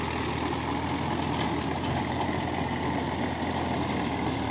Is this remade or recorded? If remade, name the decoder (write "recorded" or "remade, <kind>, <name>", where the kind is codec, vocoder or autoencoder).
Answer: recorded